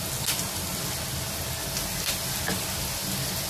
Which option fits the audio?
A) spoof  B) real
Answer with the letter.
B